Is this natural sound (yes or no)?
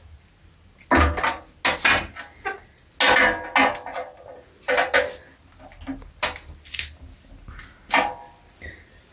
yes